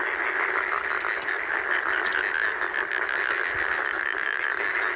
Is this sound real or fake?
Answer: real